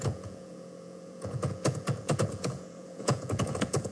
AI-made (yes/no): yes